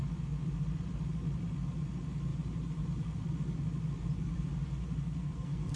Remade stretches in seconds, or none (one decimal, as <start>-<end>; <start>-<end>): 5.2-5.8